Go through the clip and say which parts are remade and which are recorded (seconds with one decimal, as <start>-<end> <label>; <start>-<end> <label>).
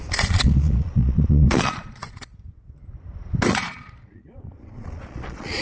0.0-2.3 remade; 2.3-3.5 recorded; 3.5-5.6 remade